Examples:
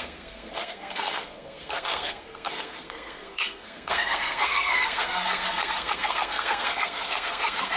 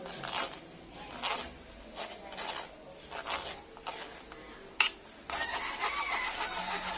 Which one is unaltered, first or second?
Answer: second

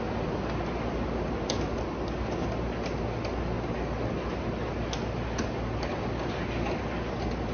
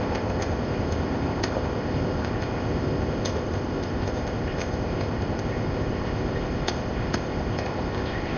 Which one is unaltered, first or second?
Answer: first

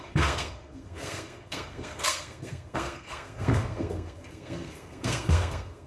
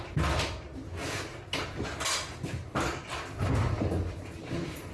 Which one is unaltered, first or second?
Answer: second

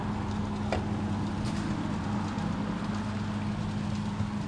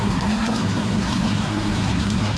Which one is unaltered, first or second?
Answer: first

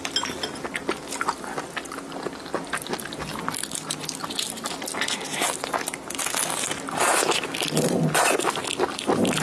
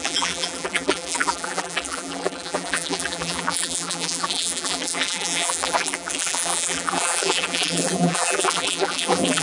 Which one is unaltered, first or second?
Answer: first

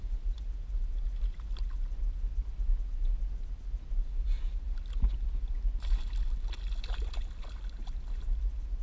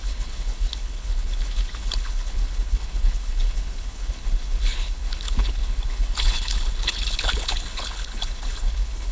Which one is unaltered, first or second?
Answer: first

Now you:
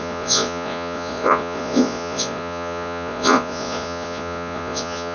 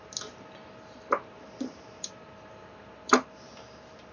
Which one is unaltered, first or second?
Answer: second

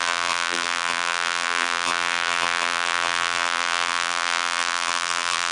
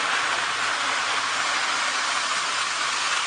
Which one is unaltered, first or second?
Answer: second